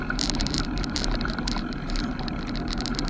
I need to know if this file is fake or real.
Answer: fake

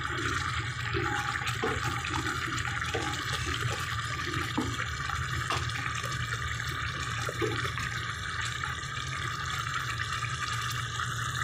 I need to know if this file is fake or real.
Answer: real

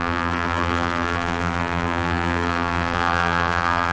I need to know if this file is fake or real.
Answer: fake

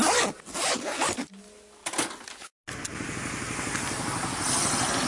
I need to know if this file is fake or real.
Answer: real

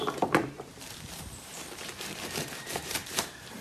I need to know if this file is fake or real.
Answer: fake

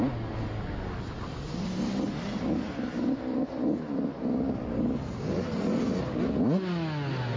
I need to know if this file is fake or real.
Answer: real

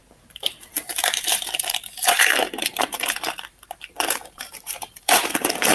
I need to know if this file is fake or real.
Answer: fake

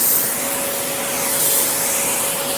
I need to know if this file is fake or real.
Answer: real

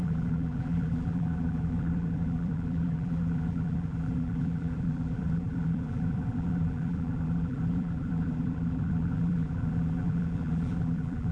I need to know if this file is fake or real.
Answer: fake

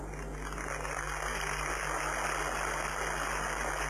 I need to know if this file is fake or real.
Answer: real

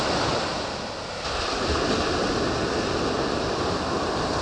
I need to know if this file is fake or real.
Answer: real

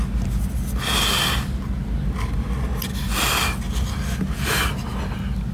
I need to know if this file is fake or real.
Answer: real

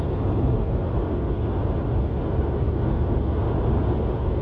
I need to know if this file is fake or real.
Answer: real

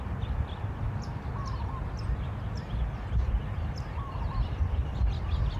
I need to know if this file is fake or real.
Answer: real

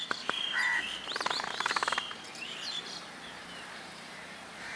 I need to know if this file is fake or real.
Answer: fake